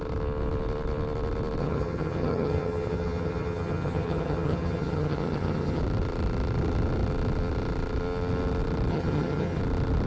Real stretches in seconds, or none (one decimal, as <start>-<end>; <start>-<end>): 0.0-1.6; 5.8-8.9; 9.6-10.1